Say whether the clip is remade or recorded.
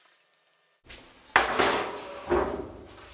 recorded